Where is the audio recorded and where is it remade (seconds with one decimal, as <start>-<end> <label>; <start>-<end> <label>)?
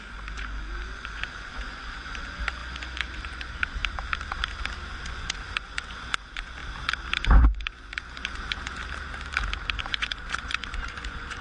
0.0-3.8 remade; 3.8-5.0 recorded; 5.0-6.6 remade; 6.6-7.2 recorded; 7.2-8.8 remade; 8.8-9.8 recorded; 9.8-11.4 remade